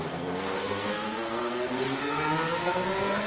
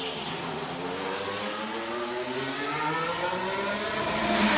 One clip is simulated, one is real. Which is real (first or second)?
second